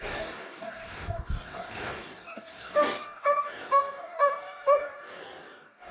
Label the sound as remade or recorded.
remade